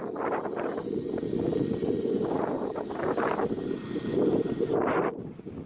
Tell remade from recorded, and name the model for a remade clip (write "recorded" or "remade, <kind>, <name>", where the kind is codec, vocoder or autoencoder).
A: recorded